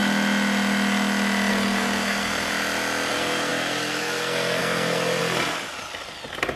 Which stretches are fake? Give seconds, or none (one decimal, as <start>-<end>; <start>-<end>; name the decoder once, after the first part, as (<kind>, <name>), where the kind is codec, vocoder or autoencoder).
1.5-2.5 (codec, SNAC); 3.1-5.2